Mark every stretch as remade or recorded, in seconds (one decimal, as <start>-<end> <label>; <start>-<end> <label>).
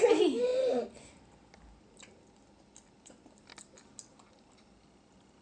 0.0-5.4 recorded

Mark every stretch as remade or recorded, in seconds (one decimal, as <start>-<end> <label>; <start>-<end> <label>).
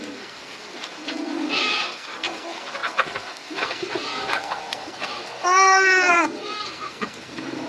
0.0-7.7 remade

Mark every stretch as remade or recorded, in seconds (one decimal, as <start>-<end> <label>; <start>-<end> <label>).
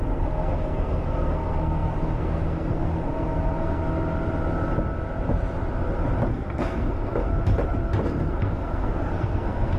0.0-3.8 remade; 3.8-6.3 recorded; 6.3-7.3 remade; 7.3-8.0 recorded; 8.0-9.8 remade